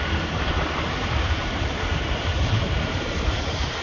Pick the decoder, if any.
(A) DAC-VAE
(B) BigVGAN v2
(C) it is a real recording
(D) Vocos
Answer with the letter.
B